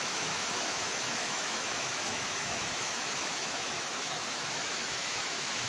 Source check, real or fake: fake